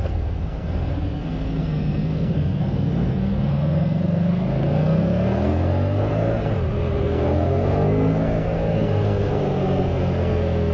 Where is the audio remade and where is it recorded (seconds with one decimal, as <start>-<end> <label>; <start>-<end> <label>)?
0.0-6.5 remade; 6.5-7.0 recorded; 7.0-10.7 remade